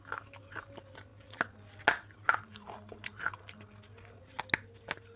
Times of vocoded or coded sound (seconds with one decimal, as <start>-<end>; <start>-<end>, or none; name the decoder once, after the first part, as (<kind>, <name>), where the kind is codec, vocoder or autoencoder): none